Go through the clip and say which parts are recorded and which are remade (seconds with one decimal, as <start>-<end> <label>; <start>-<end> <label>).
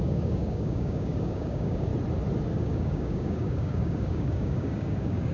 0.0-1.9 remade; 1.9-2.5 recorded; 2.5-5.3 remade